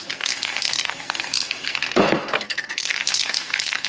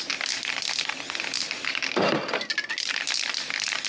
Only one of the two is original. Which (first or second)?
second